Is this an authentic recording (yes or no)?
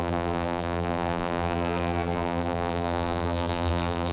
no